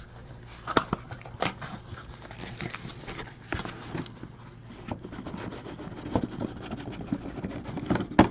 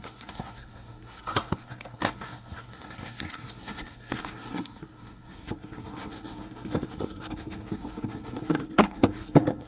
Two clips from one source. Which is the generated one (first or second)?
second